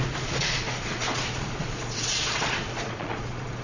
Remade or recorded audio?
remade